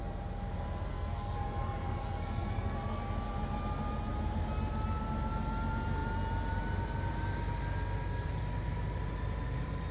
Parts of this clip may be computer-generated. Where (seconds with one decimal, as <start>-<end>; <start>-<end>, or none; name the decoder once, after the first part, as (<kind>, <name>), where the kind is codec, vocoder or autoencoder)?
0.9-3.0 (codec, SNAC)